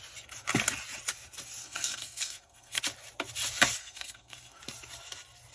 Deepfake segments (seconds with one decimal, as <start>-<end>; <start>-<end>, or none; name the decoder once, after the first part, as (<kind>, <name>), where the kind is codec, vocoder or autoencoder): 1.6-2.8 (codec, SNAC); 3.8-4.6